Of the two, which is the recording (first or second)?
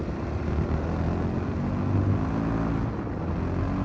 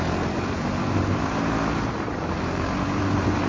first